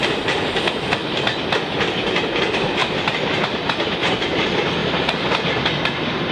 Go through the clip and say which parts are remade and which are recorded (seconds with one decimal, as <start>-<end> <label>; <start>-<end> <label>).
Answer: 0.0-2.8 recorded; 2.8-3.8 remade; 3.8-6.3 recorded